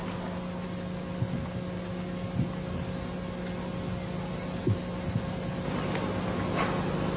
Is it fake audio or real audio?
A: real